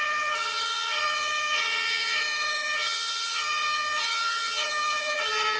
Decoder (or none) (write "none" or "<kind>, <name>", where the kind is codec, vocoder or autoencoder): vocoder, HiFi-GAN